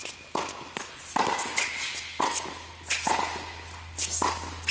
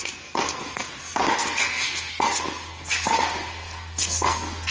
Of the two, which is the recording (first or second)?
first